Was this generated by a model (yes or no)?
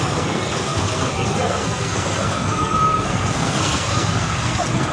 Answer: yes